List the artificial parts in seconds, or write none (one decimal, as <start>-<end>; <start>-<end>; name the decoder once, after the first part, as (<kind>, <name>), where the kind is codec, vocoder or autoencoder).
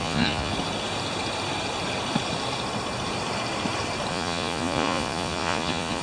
0.0-0.5 (vocoder, Vocos); 4.1-6.0